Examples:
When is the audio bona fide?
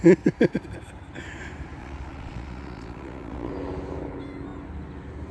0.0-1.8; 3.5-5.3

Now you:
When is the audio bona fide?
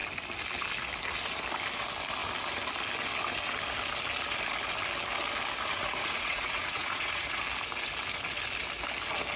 0.0-5.7; 7.4-9.4